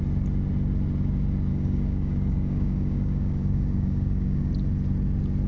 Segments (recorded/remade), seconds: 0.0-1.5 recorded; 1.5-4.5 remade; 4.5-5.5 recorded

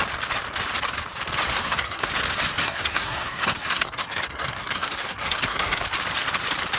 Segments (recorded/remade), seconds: 0.0-1.6 recorded; 1.6-2.1 remade; 2.1-2.6 recorded; 2.6-5.8 remade; 5.8-6.8 recorded

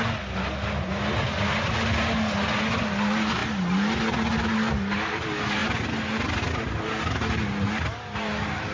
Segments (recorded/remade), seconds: 0.0-8.7 recorded

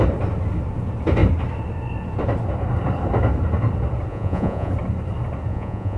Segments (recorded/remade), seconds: 0.0-4.1 recorded; 4.1-4.7 remade; 4.7-5.5 recorded; 5.5-6.0 remade

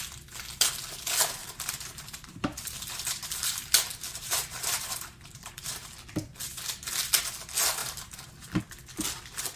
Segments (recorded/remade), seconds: 0.0-1.4 recorded; 1.4-5.9 remade; 5.9-7.8 recorded; 7.8-8.6 remade; 8.6-9.6 recorded

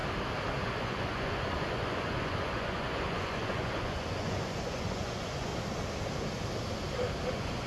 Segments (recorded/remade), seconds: 0.0-0.6 recorded; 0.6-5.5 remade; 5.5-7.3 recorded; 7.3-7.7 remade

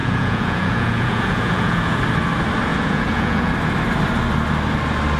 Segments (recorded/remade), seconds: 0.0-2.0 remade; 2.0-2.7 recorded; 2.7-3.5 remade; 3.5-5.2 recorded